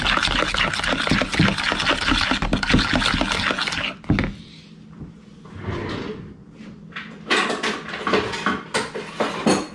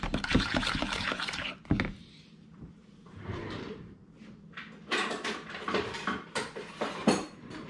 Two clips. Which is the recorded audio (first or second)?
first